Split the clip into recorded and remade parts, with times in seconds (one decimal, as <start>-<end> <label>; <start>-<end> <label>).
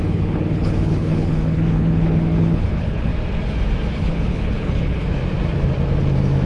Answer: 0.0-3.1 remade; 3.1-3.9 recorded; 3.9-5.2 remade; 5.2-6.5 recorded